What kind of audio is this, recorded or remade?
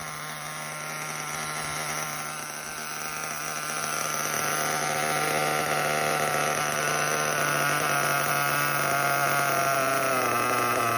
recorded